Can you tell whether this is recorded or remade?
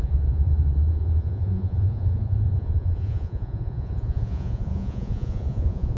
remade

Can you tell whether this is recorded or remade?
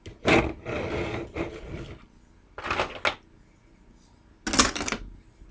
recorded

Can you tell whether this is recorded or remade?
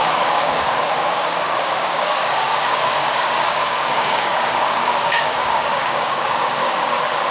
remade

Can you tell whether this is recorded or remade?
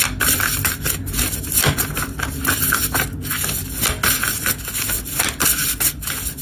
recorded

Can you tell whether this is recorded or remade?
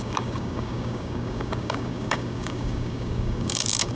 remade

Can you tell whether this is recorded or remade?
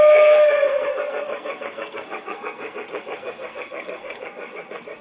remade